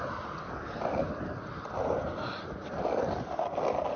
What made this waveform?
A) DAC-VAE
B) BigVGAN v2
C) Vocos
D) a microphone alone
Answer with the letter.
D